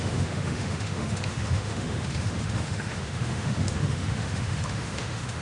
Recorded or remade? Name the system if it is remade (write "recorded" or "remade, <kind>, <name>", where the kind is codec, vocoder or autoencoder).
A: remade, autoencoder, DAC-VAE